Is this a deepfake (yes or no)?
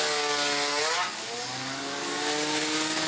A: yes